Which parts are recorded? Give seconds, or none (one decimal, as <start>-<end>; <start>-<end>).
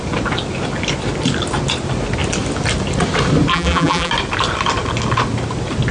0.0-3.5; 4.1-5.9